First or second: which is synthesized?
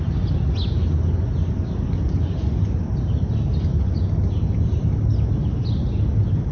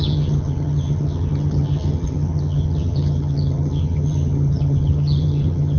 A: second